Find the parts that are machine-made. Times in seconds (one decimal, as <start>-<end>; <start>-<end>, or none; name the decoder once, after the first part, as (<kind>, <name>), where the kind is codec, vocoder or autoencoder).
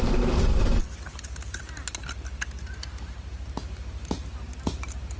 none